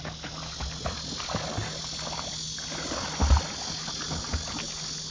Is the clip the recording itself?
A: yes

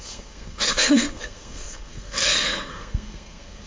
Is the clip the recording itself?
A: no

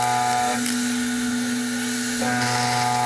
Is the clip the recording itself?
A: yes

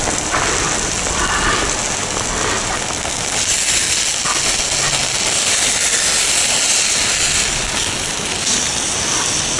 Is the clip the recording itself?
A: yes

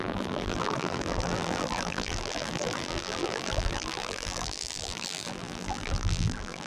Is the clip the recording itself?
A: no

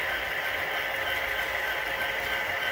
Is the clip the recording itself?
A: yes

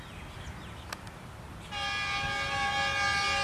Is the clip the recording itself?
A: yes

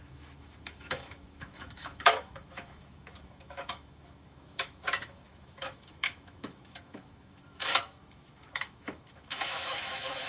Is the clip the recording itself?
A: no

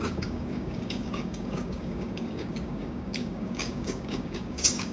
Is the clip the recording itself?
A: no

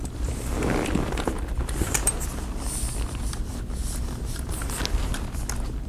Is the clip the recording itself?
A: no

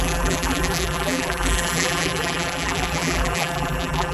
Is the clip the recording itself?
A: no